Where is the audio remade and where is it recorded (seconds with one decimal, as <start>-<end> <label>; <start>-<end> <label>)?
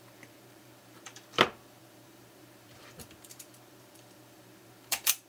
0.0-5.3 remade